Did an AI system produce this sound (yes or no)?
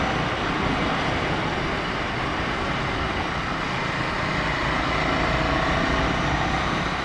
no